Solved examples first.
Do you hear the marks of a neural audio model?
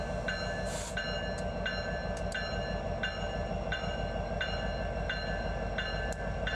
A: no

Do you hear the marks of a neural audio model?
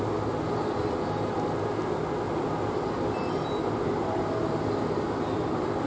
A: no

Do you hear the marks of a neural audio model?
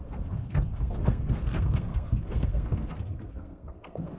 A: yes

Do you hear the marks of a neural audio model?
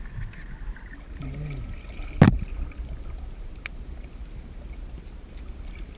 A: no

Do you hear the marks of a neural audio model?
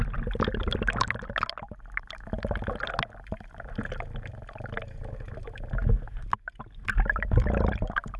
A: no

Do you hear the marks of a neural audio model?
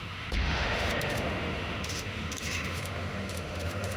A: yes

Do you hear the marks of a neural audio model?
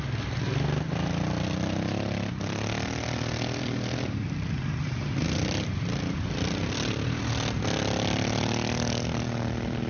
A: no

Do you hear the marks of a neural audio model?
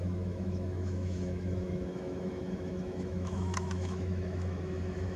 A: yes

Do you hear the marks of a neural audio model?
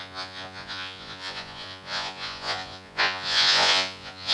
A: yes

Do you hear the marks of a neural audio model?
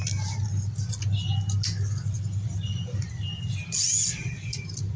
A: no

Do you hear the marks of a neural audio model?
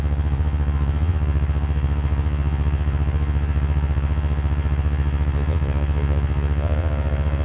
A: yes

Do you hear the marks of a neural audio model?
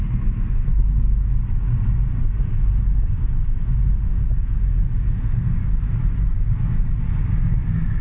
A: no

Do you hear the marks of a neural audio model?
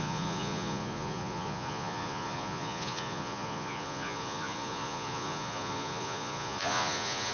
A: yes